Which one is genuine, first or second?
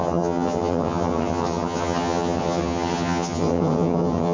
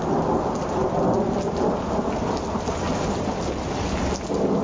second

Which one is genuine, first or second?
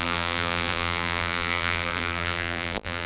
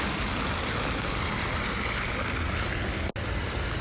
second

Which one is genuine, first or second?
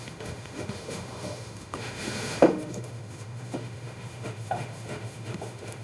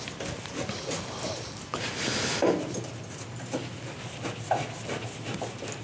second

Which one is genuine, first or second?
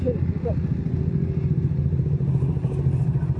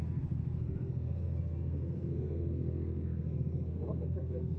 first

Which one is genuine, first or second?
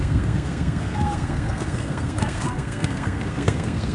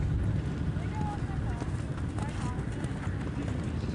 second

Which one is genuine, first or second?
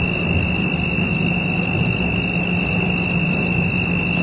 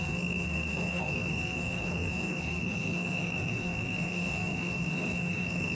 first